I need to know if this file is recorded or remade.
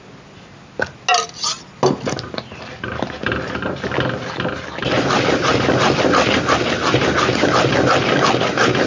recorded